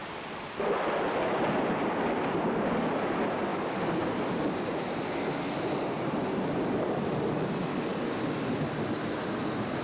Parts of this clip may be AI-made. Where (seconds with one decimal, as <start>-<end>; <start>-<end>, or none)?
none